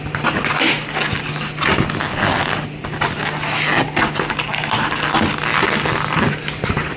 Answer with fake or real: real